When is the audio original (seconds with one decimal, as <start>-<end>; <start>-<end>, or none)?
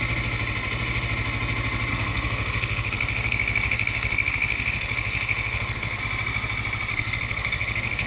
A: 0.0-1.9; 6.0-6.9